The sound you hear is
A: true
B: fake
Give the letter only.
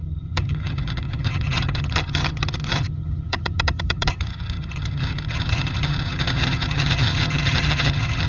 B